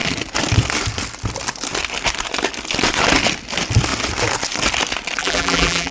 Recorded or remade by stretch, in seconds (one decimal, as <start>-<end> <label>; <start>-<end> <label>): 0.0-5.2 recorded; 5.2-5.9 remade